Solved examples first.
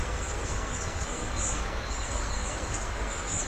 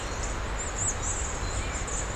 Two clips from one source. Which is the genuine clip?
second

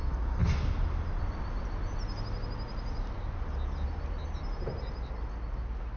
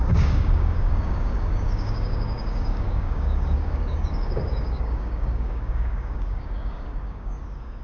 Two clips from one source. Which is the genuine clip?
first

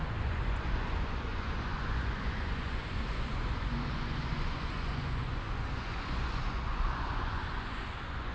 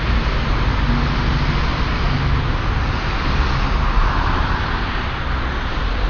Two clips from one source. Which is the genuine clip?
second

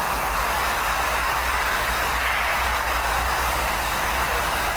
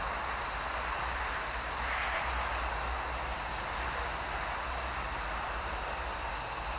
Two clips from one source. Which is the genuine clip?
second